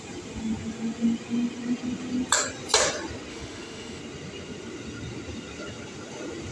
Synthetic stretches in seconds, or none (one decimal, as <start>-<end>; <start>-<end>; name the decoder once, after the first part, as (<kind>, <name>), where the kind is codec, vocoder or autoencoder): 3.3-4.0 (autoencoder, DAC-VAE)